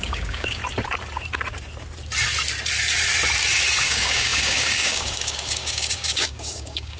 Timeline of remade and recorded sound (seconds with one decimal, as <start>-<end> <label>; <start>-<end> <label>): 0.0-0.6 remade; 0.6-3.8 recorded; 3.8-7.0 remade